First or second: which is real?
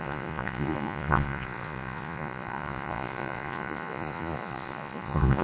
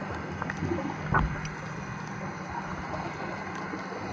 second